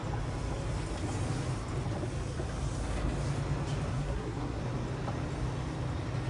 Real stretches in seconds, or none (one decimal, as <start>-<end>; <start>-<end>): 0.0-3.9; 4.6-6.3